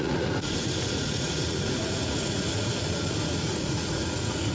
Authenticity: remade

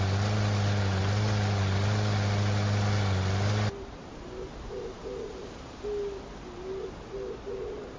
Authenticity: recorded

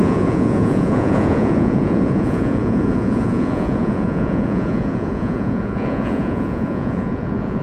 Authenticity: remade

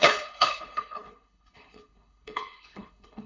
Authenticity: remade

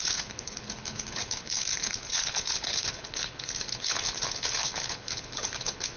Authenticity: remade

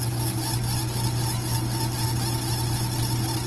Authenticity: recorded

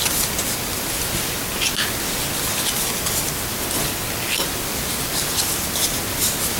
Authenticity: recorded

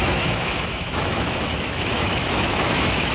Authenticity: remade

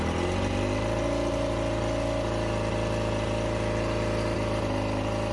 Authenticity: recorded